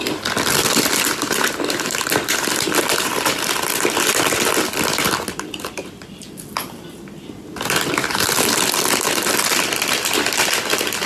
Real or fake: fake